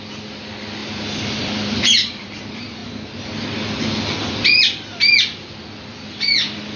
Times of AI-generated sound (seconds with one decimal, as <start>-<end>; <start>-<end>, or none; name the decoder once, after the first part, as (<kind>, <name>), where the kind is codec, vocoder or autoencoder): 0.8-2.4 (vocoder, BigVGAN v2)